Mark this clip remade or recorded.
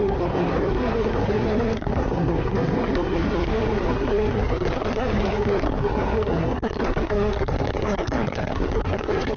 remade